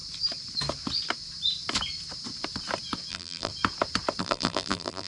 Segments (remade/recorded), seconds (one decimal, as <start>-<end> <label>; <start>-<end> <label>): 0.0-3.1 recorded; 3.1-3.5 remade; 3.5-4.2 recorded; 4.2-5.1 remade